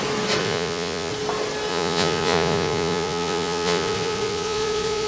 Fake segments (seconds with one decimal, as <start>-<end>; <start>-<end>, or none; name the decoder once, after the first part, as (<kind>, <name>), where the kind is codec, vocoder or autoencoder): 0.4-1.1 (vocoder, Vocos); 1.7-5.1